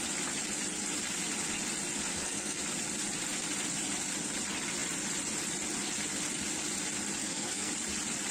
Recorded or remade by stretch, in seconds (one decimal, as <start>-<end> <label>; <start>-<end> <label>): 0.0-2.1 recorded; 2.1-2.6 remade; 2.6-7.2 recorded; 7.2-7.7 remade; 7.7-8.3 recorded